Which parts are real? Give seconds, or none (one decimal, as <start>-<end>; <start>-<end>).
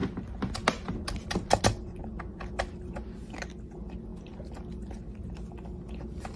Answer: 0.0-6.4